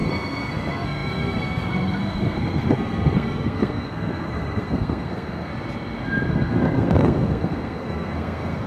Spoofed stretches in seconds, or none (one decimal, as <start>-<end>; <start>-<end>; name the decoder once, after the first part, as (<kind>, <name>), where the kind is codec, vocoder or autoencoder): 0.0-5.5 (codec, SNAC); 6.3-8.7